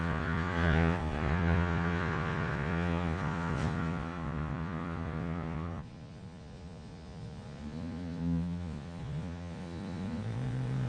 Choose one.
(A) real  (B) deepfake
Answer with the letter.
B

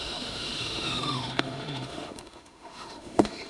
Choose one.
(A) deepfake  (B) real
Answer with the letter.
A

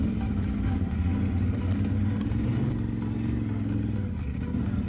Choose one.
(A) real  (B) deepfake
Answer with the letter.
A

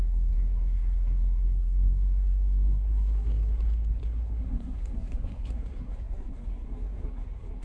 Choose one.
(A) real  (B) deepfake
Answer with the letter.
B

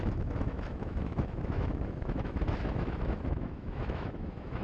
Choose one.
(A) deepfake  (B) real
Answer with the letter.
A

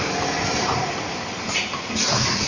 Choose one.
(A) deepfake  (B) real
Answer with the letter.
B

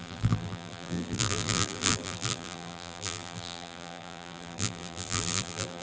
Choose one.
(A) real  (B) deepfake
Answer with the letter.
B